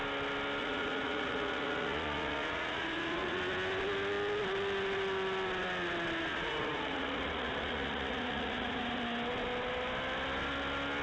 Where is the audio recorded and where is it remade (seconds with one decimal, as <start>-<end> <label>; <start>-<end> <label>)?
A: 0.0-0.6 recorded; 0.6-3.4 remade; 3.4-6.3 recorded; 6.3-9.0 remade; 9.0-11.0 recorded